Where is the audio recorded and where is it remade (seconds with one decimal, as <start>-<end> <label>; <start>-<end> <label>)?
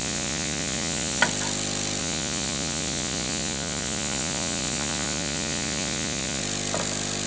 0.0-1.2 remade; 1.2-2.0 recorded; 2.0-6.4 remade; 6.4-7.3 recorded